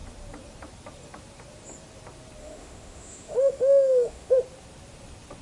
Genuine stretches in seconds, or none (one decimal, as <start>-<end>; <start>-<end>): 0.0-2.4; 4.3-5.4